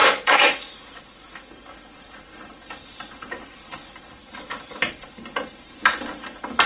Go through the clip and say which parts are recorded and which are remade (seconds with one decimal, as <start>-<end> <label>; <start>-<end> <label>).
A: 0.0-1.5 remade; 1.5-4.2 recorded; 4.2-4.9 remade; 4.9-6.7 recorded

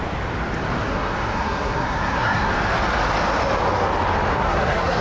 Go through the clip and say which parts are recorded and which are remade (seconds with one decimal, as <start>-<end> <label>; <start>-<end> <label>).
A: 0.0-0.9 recorded; 0.9-2.5 remade; 2.5-4.3 recorded; 4.3-5.0 remade

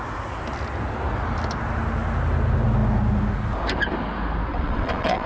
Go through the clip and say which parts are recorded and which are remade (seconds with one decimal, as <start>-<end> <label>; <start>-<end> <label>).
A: 0.0-4.5 recorded; 4.5-5.3 remade